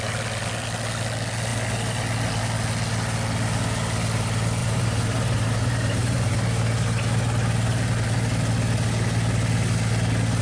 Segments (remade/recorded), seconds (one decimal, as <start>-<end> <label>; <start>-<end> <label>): 0.0-4.6 recorded; 4.6-6.4 remade; 6.4-10.4 recorded